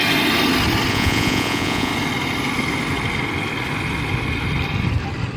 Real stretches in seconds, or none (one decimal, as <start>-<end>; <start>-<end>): 0.0-0.9; 1.9-5.4